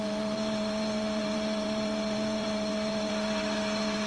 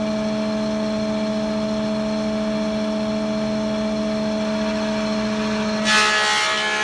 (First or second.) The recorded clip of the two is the second